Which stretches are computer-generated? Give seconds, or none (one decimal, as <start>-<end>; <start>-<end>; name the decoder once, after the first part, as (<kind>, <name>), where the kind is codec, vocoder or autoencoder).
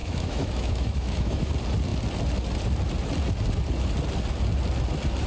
0.0-1.5 (autoencoder, DAC-VAE)